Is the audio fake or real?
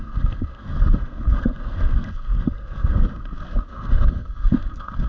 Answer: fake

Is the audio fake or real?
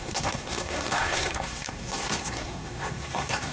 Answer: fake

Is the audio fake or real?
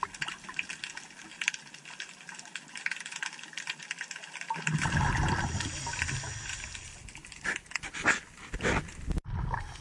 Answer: real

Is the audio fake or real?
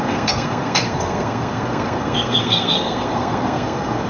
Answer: fake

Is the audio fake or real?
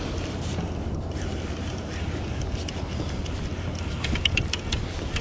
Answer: real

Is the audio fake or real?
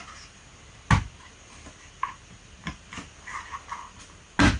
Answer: real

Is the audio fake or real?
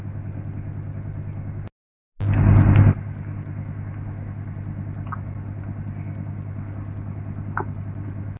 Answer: real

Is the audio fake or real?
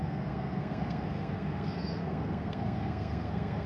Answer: fake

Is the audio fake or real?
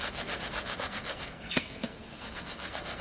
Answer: fake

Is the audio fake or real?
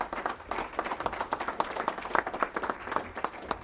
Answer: real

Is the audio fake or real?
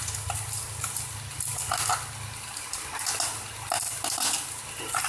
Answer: real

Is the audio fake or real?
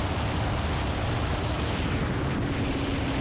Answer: real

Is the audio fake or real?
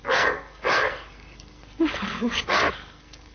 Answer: fake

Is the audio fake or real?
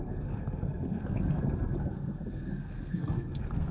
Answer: fake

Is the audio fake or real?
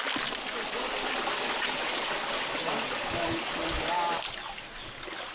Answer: real